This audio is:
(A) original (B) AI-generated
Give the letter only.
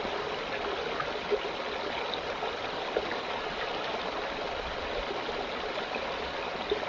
A